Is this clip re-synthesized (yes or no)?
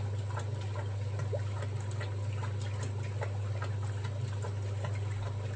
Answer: no